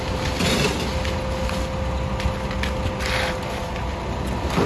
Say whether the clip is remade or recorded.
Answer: recorded